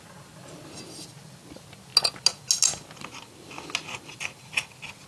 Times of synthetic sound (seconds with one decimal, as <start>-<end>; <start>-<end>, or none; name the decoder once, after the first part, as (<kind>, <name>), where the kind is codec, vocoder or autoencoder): none